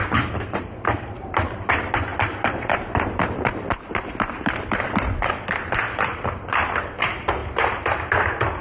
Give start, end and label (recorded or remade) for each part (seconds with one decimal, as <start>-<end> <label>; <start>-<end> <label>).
0.0-8.6 remade